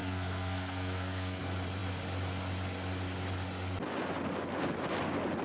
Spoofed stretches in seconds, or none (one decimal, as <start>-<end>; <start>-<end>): 0.0-1.4